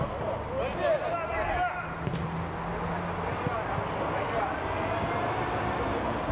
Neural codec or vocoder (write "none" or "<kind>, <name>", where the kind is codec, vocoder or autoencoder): none